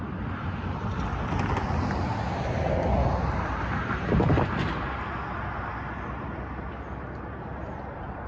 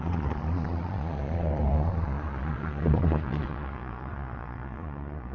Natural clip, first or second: first